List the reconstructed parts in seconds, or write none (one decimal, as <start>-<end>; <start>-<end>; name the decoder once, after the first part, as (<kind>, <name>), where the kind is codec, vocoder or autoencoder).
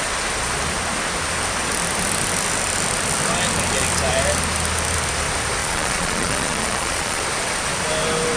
5.6-7.2 (vocoder, Vocos)